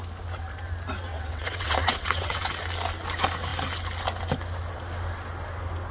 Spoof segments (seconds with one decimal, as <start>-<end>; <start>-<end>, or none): 1.1-2.5